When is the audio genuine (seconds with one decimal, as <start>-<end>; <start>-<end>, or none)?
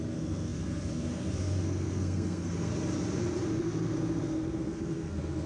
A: 2.7-3.6